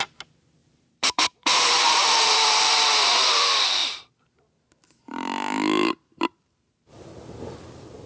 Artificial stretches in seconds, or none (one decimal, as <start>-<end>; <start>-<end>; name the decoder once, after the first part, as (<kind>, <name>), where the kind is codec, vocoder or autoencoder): 0.6-2.7 (vocoder, BigVGAN v2)